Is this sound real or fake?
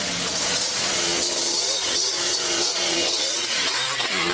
fake